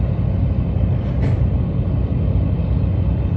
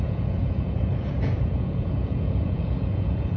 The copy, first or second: second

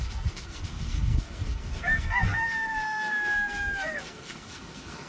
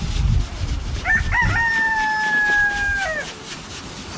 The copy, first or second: first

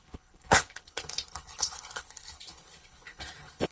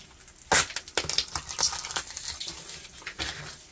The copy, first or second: first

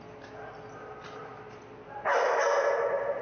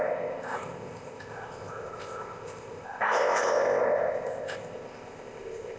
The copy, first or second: second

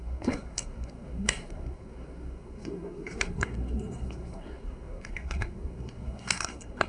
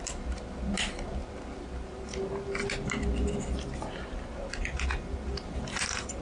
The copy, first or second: first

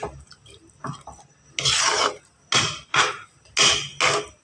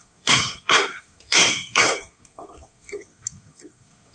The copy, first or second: second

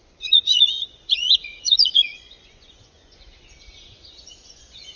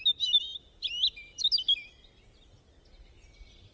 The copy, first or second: first